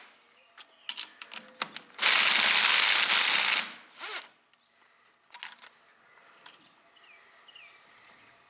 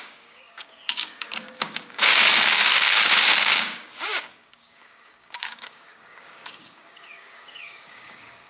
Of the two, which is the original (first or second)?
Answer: first